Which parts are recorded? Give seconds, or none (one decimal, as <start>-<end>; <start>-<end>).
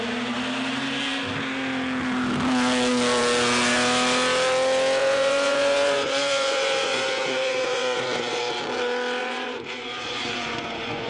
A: 0.0-5.0; 8.5-9.2